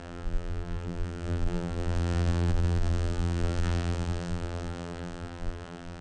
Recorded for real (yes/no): no